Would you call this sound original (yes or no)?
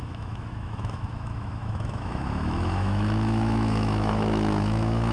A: no